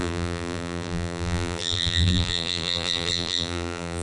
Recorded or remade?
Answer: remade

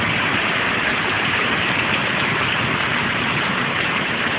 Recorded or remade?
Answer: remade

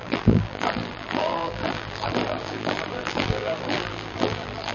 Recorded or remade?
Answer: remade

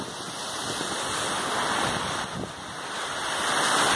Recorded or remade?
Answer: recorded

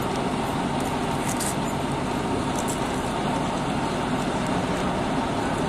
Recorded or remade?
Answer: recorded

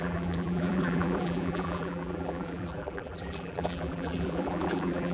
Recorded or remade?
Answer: remade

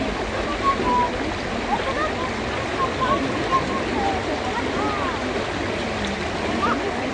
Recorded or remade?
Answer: recorded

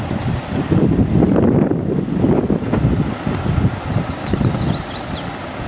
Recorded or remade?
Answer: remade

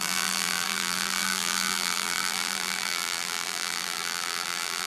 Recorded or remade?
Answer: remade